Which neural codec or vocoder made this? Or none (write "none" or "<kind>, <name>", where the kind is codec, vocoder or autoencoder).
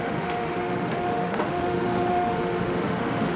autoencoder, DAC-VAE